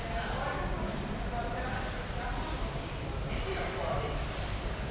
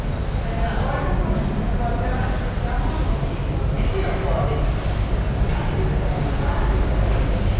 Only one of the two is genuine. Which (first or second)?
second